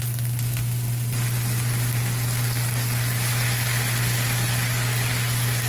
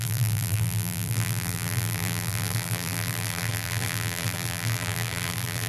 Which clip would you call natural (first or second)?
first